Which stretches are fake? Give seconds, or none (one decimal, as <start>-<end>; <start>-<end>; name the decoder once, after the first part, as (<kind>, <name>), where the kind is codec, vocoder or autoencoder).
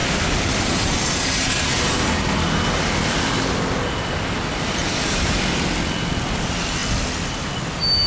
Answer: 0.0-2.1 (vocoder, BigVGAN v2); 4.8-5.4